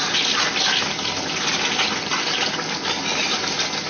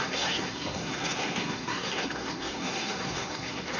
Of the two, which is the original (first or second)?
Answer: first